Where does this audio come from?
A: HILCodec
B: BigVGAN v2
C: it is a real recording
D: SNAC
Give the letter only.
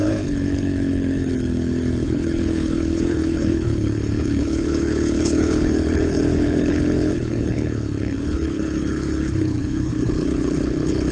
A